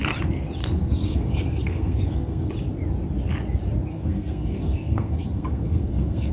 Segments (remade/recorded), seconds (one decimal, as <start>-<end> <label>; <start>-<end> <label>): 0.0-0.6 recorded; 0.6-2.5 remade; 2.5-3.9 recorded; 3.9-6.3 remade